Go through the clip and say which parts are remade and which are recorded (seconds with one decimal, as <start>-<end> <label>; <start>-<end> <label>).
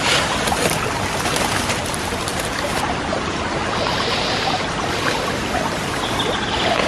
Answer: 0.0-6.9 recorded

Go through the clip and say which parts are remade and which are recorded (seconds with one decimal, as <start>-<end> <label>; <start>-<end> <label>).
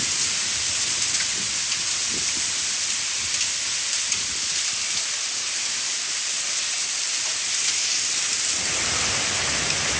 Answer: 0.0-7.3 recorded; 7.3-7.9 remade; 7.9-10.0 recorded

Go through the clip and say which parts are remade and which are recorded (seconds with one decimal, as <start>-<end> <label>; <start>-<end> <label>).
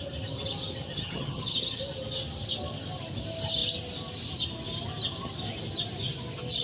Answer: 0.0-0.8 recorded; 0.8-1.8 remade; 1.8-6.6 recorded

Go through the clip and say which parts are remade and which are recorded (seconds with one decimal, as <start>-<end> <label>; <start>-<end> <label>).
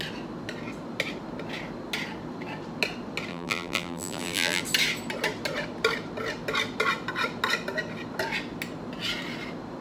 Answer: 0.0-3.3 recorded; 3.3-4.6 remade; 4.6-9.8 recorded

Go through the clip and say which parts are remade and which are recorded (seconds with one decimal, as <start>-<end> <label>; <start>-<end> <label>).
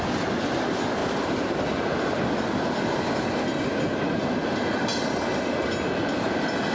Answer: 0.0-6.7 recorded